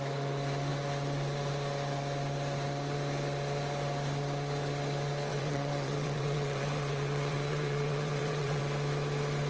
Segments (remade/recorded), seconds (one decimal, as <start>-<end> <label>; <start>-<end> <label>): 0.0-5.3 recorded; 5.3-8.6 remade; 8.6-9.5 recorded